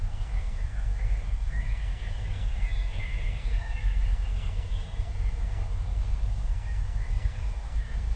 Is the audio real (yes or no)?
no